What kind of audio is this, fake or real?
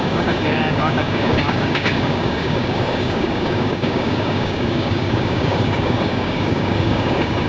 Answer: fake